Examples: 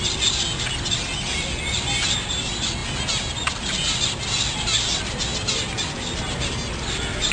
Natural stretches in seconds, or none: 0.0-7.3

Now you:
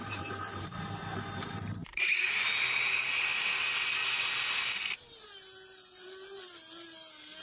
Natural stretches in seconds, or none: 1.0-1.8; 2.3-7.4

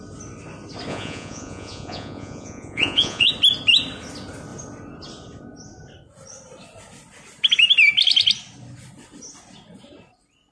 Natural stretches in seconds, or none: 0.0-0.9; 3.3-10.5

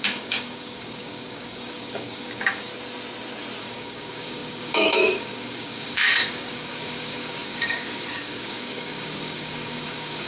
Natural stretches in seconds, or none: 2.7-3.6

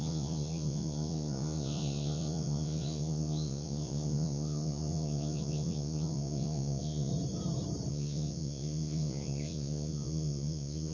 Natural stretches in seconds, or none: 7.1-7.9

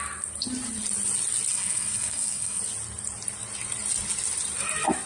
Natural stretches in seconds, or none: 0.0-1.5; 2.6-5.1

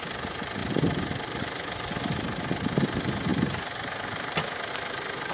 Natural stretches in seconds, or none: 0.0-5.3